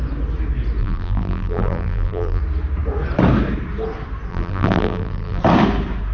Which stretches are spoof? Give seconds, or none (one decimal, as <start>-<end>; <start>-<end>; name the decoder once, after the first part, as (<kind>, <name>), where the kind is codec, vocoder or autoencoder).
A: 0.8-2.4 (vocoder, BigVGAN v2); 4.3-5.4